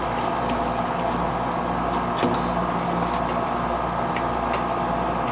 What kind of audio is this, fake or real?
real